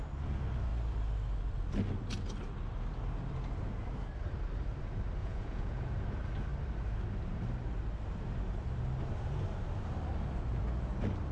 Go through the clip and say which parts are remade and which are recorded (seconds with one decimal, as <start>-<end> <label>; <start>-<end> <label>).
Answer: 0.0-5.2 recorded; 5.2-5.8 remade; 5.8-11.3 recorded